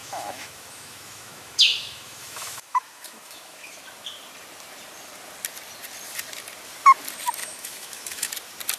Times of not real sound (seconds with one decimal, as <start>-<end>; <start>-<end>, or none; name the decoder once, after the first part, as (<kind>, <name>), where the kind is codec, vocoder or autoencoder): 0.0-3.8 (autoencoder, DAC-VAE); 7.4-8.3